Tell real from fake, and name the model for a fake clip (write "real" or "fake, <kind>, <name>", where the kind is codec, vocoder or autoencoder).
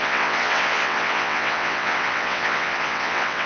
fake, vocoder, WaveNeXt